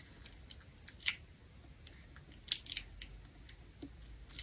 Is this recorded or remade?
recorded